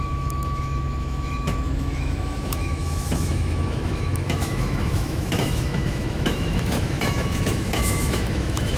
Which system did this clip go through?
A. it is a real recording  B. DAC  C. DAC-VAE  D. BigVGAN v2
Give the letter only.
C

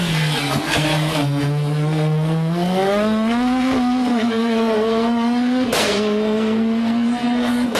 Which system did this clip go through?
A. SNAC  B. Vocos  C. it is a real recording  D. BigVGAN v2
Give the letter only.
A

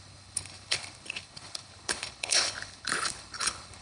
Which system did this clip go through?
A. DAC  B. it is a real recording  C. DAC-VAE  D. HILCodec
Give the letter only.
D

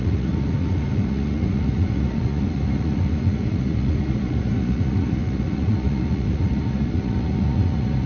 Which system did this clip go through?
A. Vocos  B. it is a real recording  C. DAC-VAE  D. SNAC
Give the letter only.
A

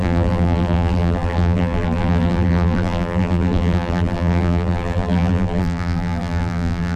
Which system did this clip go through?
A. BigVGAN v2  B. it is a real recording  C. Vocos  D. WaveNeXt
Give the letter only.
A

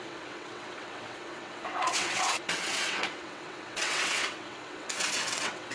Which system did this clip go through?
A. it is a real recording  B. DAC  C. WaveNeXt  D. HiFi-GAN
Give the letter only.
C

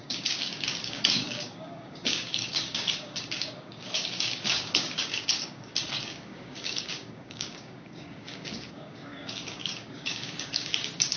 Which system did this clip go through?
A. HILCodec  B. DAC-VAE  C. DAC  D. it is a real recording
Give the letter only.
C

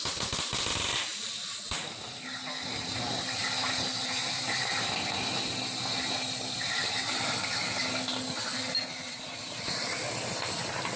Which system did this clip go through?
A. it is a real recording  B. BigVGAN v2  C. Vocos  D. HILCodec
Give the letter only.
A